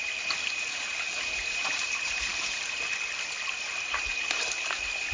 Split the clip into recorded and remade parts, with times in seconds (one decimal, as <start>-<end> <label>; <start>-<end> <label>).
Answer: 0.0-5.1 recorded